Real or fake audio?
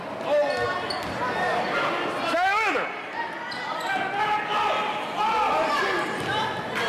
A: real